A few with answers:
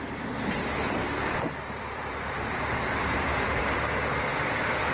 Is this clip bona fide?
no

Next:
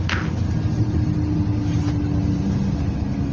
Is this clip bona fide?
yes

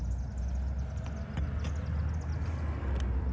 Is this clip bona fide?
yes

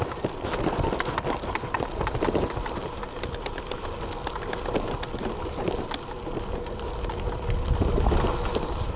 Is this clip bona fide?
yes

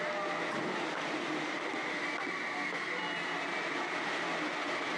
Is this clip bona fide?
yes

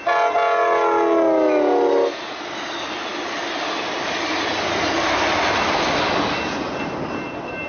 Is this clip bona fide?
yes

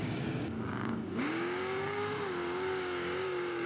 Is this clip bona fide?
no